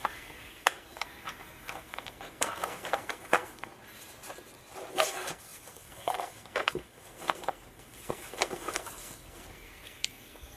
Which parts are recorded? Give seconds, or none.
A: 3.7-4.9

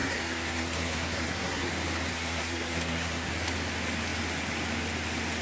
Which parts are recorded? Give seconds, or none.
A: 1.7-2.1; 3.3-5.4

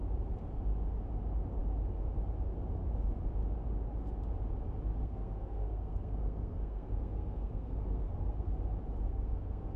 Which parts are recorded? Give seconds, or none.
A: 0.0-5.0; 8.5-9.1

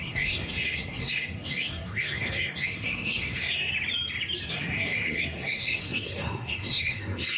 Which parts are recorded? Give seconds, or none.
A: 3.7-4.5

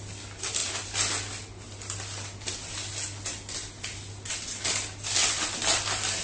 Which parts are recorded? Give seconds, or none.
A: 0.0-6.2

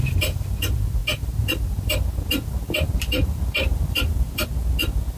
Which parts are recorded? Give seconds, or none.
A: 0.0-5.2

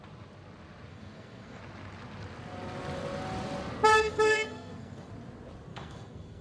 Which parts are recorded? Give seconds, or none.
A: 0.0-0.9; 1.6-3.9; 5.1-5.7